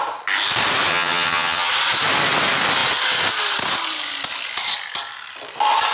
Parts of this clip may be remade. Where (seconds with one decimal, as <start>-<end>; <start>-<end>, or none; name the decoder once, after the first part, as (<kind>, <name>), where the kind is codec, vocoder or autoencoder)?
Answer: 0.9-1.7 (vocoder, HiFi-GAN)